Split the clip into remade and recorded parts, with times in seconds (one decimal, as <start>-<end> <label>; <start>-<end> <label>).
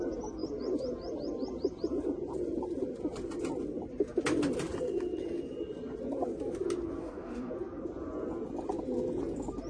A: 0.0-7.0 recorded; 7.0-7.5 remade; 7.5-9.7 recorded